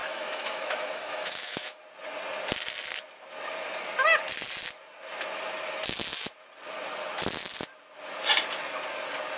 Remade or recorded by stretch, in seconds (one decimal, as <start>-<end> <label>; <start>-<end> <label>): 0.0-1.8 remade; 1.8-9.4 recorded